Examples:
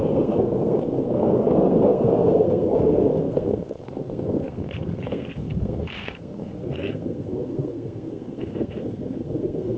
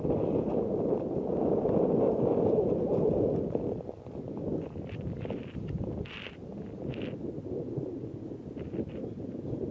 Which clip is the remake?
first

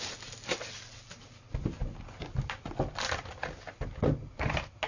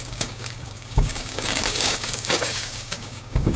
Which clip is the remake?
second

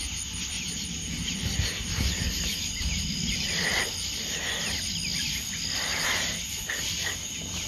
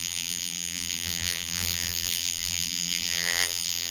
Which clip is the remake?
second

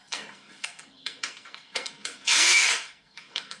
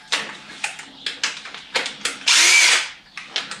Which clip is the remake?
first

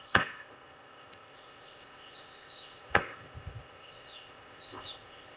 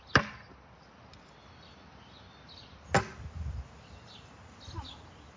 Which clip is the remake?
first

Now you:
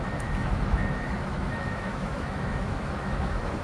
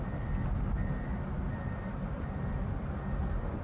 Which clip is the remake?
first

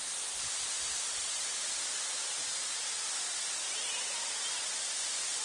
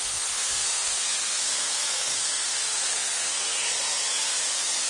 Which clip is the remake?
second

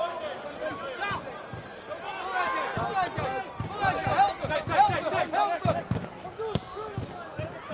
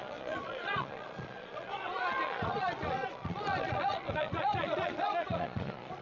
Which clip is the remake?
second